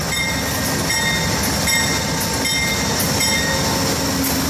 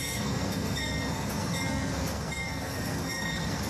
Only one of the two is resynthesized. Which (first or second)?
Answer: second